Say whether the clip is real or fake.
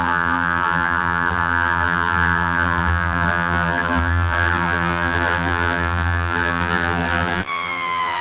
fake